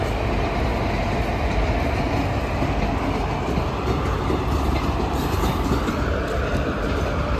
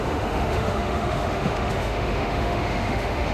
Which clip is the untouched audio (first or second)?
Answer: first